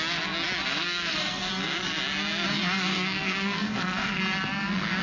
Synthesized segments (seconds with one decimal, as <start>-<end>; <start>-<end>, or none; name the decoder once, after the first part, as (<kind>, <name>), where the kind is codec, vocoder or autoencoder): 0.7-1.5 (codec, SNAC); 2.9-4.2